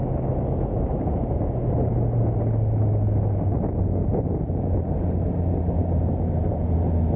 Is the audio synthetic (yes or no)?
no